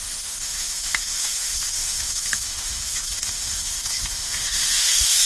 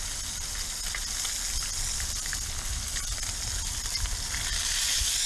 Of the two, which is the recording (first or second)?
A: second